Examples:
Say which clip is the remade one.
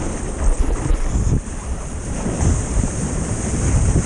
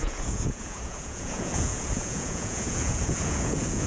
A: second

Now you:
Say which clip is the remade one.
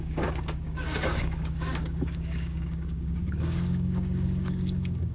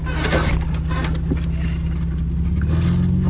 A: first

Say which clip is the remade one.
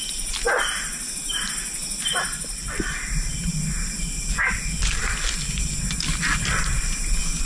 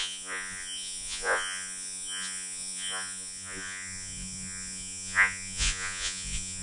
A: second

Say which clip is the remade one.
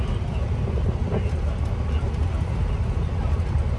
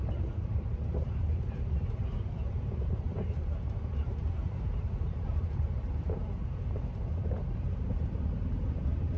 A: second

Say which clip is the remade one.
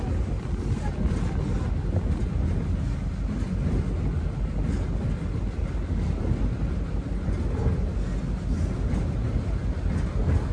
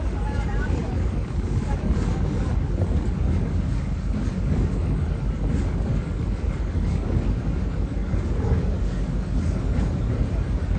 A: second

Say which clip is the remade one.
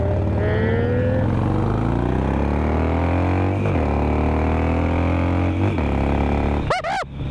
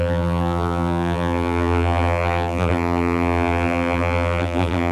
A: second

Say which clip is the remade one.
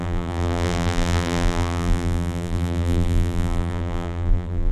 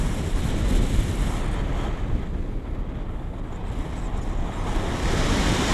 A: first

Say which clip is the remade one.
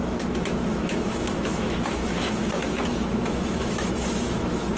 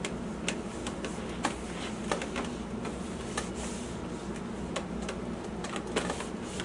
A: first